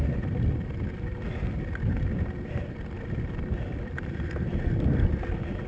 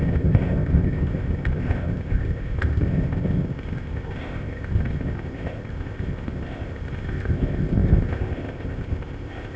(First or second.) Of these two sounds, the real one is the first